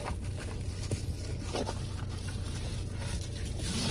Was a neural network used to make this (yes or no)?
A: no